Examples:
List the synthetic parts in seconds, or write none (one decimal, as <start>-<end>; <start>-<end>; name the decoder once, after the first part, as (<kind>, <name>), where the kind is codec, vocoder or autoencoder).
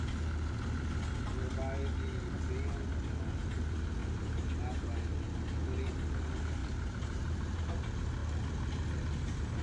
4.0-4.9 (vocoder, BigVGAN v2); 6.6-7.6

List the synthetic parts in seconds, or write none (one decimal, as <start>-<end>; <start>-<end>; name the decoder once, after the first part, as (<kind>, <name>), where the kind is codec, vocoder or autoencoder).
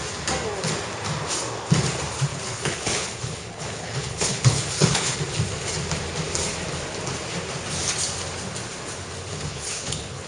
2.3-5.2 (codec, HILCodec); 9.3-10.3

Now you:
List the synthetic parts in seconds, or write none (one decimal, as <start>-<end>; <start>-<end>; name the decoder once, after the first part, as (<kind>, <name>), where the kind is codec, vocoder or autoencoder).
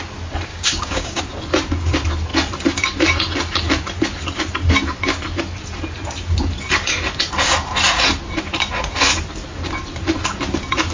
0.5-1.2 (codec, DAC)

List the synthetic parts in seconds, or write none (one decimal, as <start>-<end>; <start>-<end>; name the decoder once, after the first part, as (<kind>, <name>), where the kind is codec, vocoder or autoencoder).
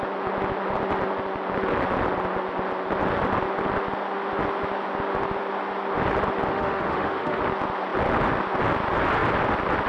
6.5-7.4 (autoencoder, DAC-VAE)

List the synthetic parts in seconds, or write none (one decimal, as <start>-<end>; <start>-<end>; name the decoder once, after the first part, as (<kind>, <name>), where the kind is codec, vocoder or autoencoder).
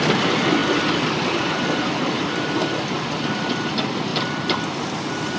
4.1-4.7 (vocoder, BigVGAN v2)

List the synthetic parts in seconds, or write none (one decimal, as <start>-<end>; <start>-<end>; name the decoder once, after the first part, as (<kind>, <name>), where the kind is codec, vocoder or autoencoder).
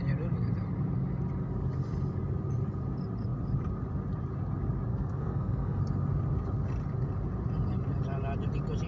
4.9-5.8 (codec, SNAC)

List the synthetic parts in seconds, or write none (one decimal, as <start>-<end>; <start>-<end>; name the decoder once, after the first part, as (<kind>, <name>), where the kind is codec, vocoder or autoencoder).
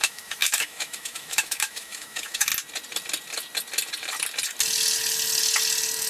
0.0-2.5 (autoencoder, DAC-VAE)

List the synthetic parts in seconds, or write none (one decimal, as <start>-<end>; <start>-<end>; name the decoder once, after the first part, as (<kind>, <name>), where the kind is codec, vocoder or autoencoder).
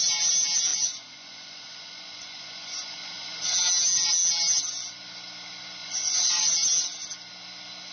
0.7-3.4 (vocoder, Vocos); 5.8-6.5